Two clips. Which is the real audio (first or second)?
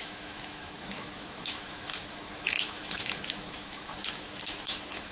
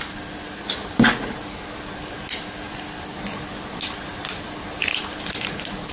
second